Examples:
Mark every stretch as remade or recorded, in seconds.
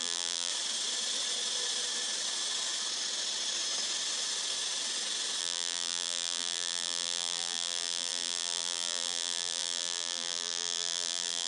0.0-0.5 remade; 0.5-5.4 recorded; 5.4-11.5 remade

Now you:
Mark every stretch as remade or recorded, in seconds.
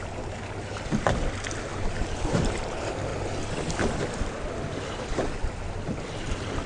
0.0-3.1 remade; 3.1-4.0 recorded; 4.0-6.7 remade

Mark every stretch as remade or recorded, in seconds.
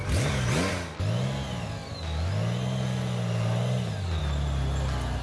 0.0-5.2 recorded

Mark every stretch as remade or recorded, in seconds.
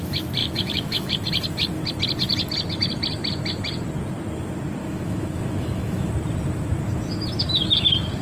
0.0-0.4 recorded; 0.4-1.1 remade; 1.1-4.8 recorded; 4.8-6.1 remade; 6.1-8.2 recorded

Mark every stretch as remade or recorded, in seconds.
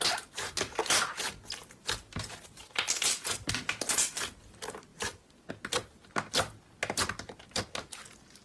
0.0-1.6 recorded; 1.6-4.2 remade; 4.2-8.4 recorded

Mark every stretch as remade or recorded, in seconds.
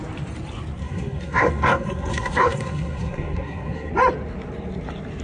0.0-0.8 recorded; 0.8-3.9 remade; 3.9-5.2 recorded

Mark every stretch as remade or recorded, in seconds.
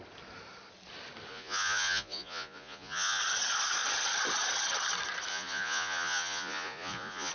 0.0-1.3 recorded; 1.3-3.2 remade; 3.2-5.3 recorded; 5.3-7.3 remade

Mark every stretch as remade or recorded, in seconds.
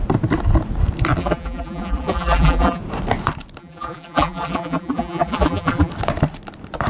0.0-1.2 recorded; 1.2-2.8 remade; 2.8-3.6 recorded; 3.6-5.9 remade; 5.9-6.9 recorded